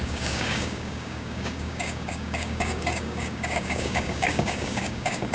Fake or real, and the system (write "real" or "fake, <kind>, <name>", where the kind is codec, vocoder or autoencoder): fake, codec, DAC